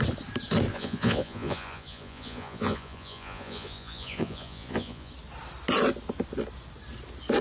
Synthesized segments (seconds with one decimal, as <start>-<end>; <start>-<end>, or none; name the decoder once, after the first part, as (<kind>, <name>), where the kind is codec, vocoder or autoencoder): 0.7-5.1 (vocoder, Vocos)